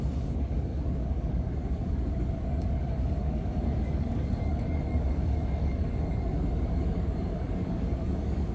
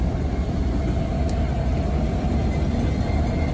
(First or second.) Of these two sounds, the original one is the second